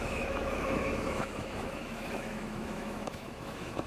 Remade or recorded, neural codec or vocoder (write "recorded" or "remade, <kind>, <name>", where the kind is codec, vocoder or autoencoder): remade, autoencoder, DAC-VAE